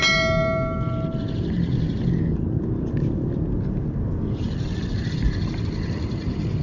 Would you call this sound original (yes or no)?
yes